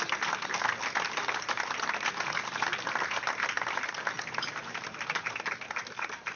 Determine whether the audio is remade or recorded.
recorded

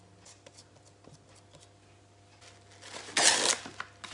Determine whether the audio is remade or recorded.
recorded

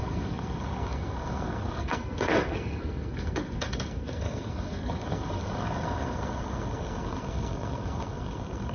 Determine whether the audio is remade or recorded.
remade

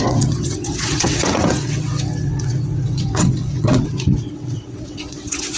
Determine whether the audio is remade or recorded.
remade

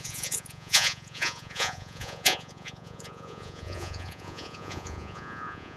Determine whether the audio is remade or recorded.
remade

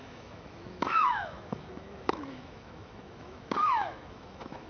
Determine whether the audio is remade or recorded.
remade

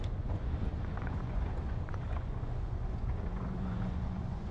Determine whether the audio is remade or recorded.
remade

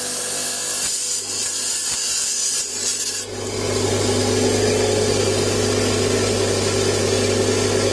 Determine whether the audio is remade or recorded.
recorded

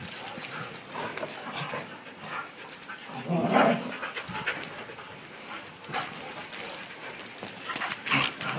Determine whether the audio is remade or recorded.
recorded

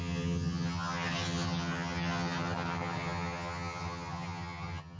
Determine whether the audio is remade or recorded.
remade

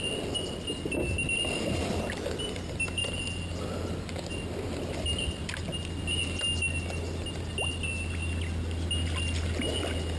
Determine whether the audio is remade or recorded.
recorded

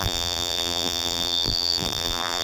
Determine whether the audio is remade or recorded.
remade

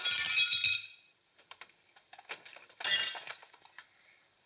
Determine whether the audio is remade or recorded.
recorded